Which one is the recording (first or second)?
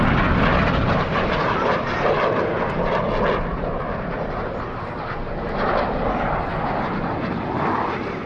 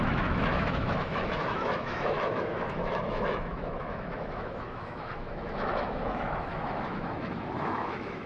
first